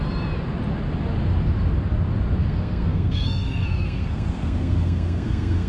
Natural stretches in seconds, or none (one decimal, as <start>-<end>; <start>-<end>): 0.0-2.4